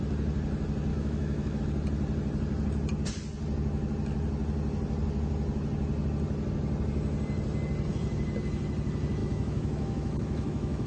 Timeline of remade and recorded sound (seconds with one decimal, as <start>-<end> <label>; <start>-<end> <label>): 0.0-0.9 recorded; 0.9-1.6 remade; 1.6-9.2 recorded; 9.2-10.9 remade